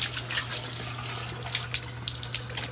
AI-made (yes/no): no